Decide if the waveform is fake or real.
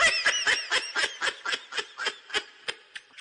real